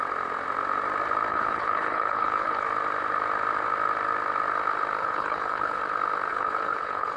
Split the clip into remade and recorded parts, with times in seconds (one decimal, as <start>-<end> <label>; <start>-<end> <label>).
0.0-1.3 recorded; 1.3-2.7 remade; 2.7-5.0 recorded; 5.0-5.8 remade; 5.8-6.3 recorded; 6.3-7.2 remade